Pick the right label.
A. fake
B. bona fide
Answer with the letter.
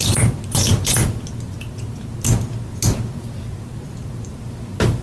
B